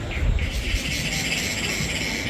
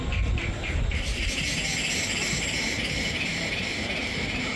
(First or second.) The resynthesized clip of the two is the second